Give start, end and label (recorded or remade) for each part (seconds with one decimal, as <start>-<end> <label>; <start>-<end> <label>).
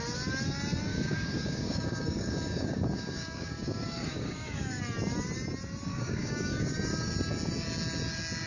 0.0-0.9 recorded; 0.9-4.8 remade; 4.8-5.9 recorded; 5.9-7.1 remade; 7.1-8.5 recorded